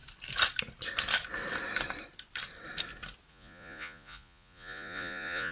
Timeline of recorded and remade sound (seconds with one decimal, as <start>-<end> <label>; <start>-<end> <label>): 0.0-3.3 recorded; 3.3-5.5 remade